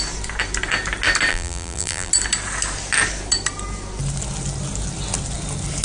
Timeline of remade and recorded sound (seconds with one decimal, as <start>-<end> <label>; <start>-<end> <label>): 0.0-1.3 recorded; 1.3-2.1 remade; 2.1-5.8 recorded